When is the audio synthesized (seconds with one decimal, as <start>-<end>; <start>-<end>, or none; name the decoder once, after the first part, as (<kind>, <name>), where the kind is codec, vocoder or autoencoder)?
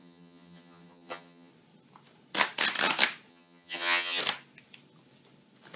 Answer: 0.0-1.5 (vocoder, HiFi-GAN); 3.3-4.2